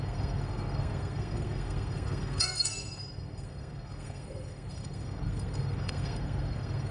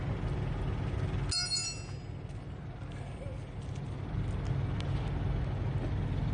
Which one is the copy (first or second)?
first